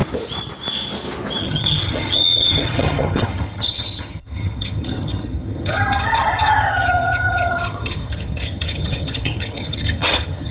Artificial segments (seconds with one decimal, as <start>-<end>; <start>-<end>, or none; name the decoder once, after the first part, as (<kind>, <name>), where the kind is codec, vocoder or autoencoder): 1.4-10.5 (vocoder, HiFi-GAN)